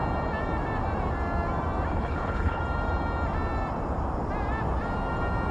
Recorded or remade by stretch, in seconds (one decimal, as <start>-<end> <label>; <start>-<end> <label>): 0.0-1.9 recorded; 1.9-2.6 remade; 2.6-5.5 recorded